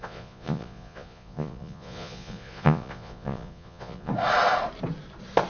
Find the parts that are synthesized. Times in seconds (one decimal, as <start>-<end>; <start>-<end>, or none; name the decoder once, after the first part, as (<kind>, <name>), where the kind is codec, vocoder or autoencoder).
0.0-4.1 (vocoder, Vocos)